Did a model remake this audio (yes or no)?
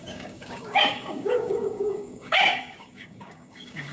yes